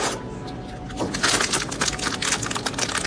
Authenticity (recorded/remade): recorded